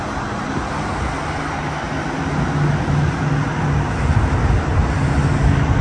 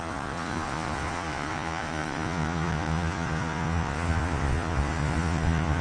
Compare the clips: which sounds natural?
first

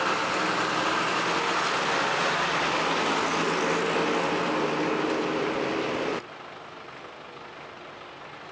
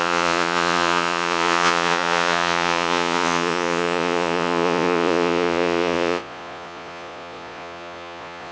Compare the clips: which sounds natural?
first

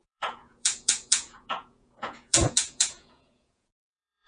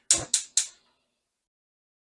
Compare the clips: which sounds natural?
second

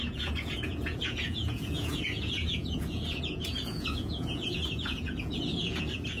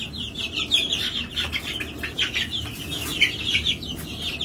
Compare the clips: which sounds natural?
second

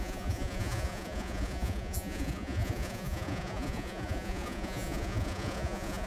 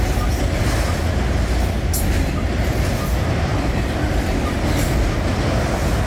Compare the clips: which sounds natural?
second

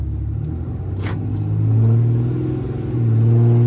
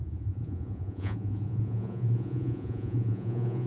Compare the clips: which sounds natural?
first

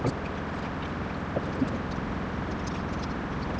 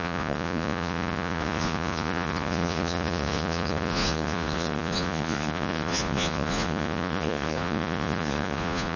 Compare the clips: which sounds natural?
first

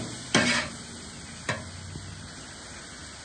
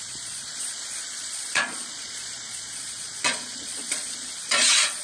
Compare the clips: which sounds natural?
first